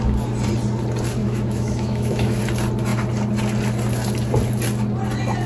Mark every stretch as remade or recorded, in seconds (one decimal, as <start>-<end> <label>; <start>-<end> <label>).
0.0-1.2 recorded; 1.2-2.4 remade; 2.4-5.5 recorded